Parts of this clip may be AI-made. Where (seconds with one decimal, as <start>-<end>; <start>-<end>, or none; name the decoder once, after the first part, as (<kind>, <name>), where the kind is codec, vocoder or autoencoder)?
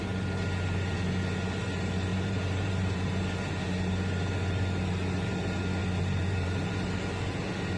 2.1-3.2 (vocoder, BigVGAN v2); 5.8-7.0